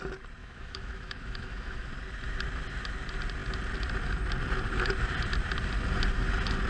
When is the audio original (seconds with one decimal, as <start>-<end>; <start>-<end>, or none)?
0.0-0.4; 1.9-6.7